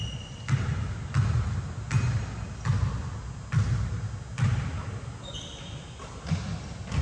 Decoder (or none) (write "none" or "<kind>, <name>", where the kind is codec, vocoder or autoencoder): none